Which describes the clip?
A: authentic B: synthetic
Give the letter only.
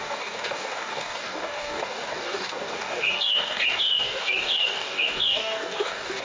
B